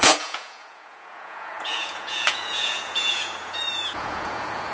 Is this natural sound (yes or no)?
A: no